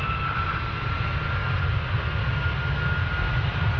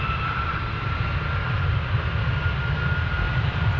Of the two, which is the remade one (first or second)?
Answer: second